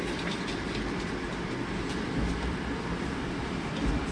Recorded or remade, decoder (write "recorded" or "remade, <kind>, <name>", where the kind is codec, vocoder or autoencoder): remade, vocoder, BigVGAN v2